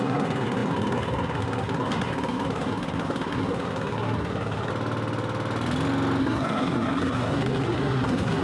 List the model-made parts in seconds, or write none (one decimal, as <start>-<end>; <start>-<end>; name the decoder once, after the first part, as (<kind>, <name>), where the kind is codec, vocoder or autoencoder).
0.0-4.7 (codec, SNAC); 6.2-8.4